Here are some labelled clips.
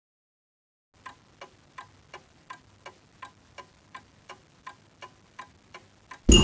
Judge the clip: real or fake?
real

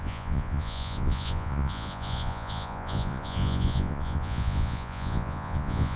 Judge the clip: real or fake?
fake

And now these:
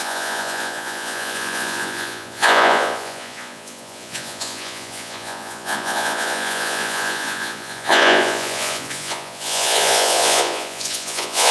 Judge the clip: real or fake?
fake